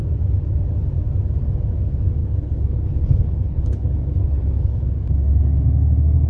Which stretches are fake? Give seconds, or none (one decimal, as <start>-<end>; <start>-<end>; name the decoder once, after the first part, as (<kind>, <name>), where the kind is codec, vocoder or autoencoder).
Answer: 2.2-5.6 (codec, HILCodec)